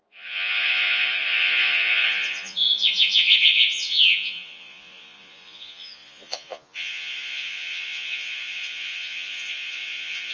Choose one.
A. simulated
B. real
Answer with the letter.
A